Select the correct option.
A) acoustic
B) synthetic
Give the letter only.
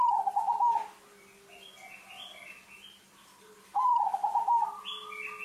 A